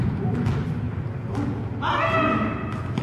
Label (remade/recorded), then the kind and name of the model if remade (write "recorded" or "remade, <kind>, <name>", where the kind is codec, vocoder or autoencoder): recorded